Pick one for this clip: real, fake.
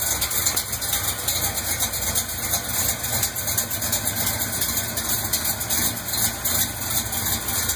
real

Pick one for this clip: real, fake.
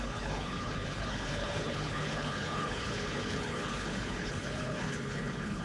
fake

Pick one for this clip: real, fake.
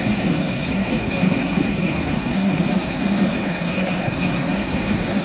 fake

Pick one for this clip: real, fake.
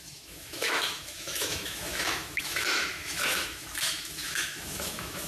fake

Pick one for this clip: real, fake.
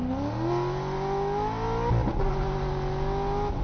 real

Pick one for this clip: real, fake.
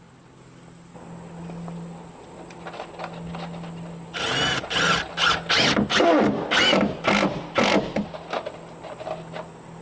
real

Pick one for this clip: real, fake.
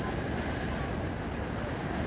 real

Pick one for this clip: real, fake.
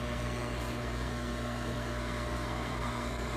fake